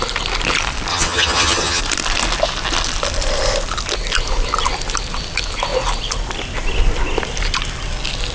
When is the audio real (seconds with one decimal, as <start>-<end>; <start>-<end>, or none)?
0.0-0.9; 1.8-8.3